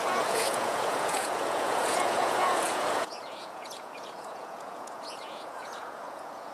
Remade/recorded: remade